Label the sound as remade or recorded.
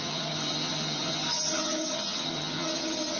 remade